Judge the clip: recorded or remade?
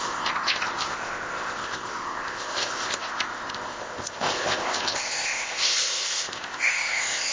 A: remade